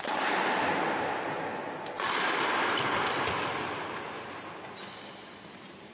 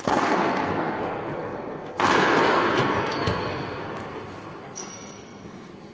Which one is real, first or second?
first